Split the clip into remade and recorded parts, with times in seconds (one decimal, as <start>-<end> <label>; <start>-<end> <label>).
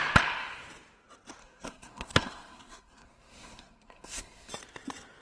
0.0-1.4 recorded; 1.4-4.5 remade; 4.5-5.2 recorded